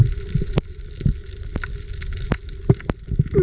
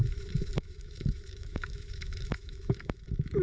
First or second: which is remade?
second